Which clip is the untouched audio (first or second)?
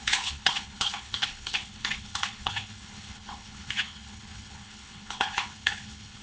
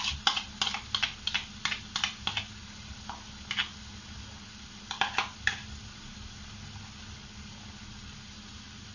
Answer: second